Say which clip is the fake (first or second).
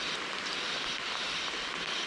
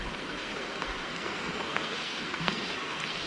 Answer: second